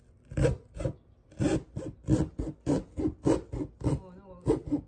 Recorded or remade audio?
recorded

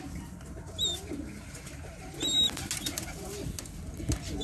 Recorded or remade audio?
recorded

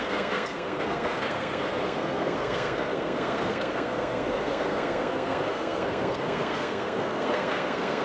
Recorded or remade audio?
remade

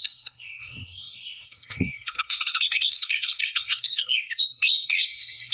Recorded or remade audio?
remade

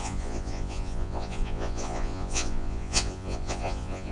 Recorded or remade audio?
remade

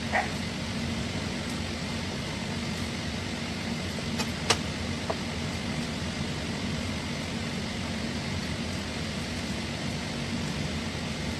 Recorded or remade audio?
recorded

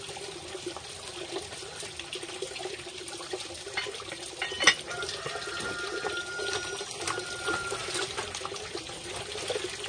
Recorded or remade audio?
recorded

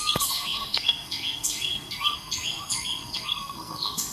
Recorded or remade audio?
remade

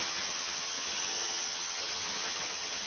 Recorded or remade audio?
remade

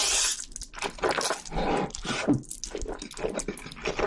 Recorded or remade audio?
recorded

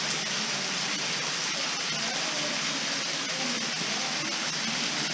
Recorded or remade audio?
recorded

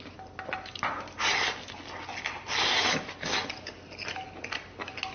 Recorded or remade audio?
recorded